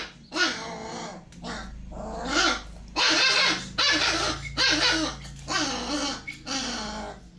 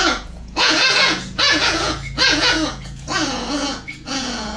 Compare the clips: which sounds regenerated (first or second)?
second